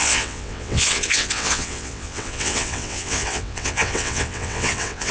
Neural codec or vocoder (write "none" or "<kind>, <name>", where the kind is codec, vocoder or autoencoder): vocoder, WaveNeXt